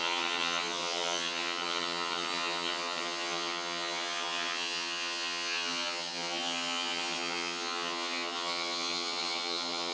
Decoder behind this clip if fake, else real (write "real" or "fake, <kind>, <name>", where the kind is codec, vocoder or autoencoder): fake, vocoder, HiFi-GAN